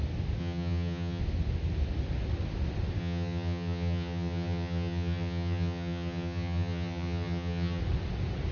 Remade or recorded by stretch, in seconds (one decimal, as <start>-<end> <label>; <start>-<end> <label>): 0.0-0.4 recorded; 0.4-1.2 remade; 1.2-3.0 recorded; 3.0-7.8 remade; 7.8-8.5 recorded